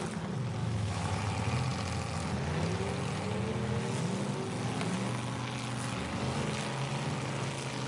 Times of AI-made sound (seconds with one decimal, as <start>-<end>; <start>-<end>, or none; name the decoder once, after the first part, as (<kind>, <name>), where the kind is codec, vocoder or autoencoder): 0.6-1.2 (autoencoder, DAC-VAE)